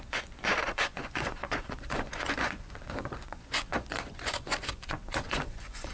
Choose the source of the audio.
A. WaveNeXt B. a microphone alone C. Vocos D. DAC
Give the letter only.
C